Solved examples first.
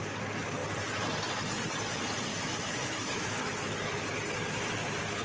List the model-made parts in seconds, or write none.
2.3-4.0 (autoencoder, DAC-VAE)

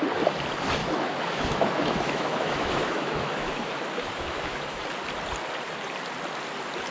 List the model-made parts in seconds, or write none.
0.8-4.8 (autoencoder, DAC-VAE)

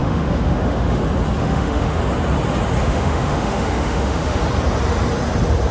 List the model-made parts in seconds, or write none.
0.0-1.0 (autoencoder, DAC-VAE); 1.4-2.0; 2.8-4.4

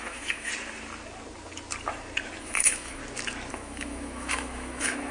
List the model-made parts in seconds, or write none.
0.0-0.5 (autoencoder, DAC-VAE); 2.4-3.0; 3.5-5.1

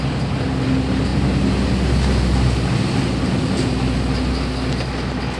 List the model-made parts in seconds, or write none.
none

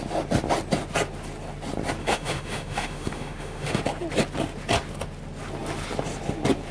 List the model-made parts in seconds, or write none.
2.0-3.8 (autoencoder, DAC-VAE)

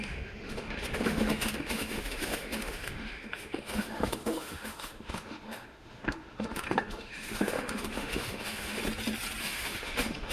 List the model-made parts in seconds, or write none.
0.0-8.8 (autoencoder, DAC-VAE); 9.4-10.3